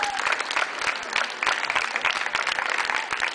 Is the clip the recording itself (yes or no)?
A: yes